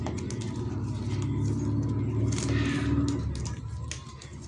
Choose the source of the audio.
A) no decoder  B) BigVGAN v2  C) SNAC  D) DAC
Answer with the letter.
A